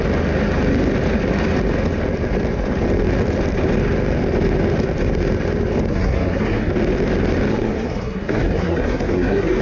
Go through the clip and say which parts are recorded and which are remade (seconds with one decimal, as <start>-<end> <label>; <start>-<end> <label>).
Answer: 0.0-5.9 recorded; 5.9-6.7 remade; 6.7-7.5 recorded; 7.5-9.6 remade